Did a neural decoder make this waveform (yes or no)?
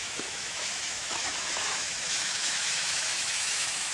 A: yes